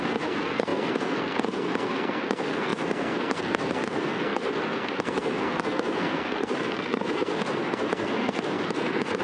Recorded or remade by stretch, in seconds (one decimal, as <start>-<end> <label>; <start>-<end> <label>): 0.0-9.2 remade